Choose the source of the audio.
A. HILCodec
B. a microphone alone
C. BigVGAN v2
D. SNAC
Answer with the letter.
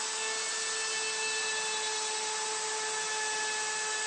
B